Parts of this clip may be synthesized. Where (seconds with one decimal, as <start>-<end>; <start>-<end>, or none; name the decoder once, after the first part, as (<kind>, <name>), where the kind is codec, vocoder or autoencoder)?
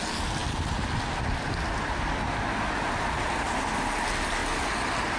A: none